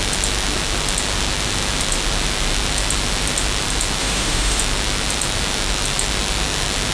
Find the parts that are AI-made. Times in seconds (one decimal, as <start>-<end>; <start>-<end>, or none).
4.0-4.6